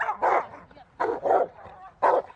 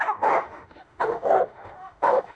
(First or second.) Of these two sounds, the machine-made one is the second